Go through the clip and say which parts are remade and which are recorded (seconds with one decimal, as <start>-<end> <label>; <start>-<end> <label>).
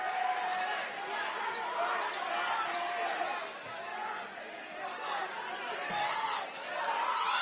0.0-3.9 recorded; 3.9-4.4 remade; 4.4-7.4 recorded